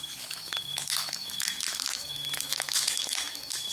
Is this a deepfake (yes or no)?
yes